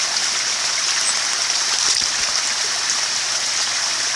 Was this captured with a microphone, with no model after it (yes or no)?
yes